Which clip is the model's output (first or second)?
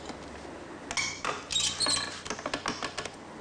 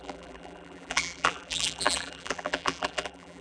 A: second